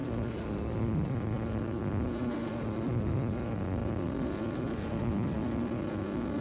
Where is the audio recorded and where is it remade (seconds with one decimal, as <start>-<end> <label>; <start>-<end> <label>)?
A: 0.0-6.4 recorded